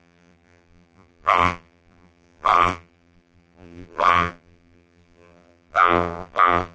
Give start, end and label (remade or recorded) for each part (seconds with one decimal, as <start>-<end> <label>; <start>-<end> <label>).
0.0-6.7 remade